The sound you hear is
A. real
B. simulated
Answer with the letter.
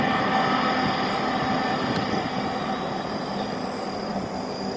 A